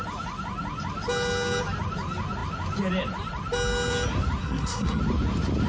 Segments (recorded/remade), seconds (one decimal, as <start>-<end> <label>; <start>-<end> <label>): 0.0-4.4 recorded; 4.4-5.0 remade; 5.0-5.7 recorded